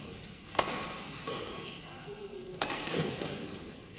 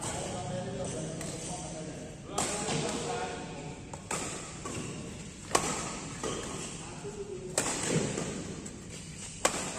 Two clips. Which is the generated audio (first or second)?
first